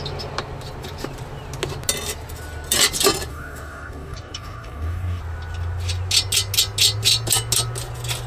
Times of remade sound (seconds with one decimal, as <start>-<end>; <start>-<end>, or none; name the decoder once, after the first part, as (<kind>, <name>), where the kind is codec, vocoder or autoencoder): 3.3-5.2 (codec, DAC)